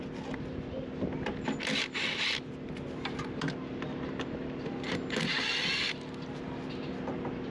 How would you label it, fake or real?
real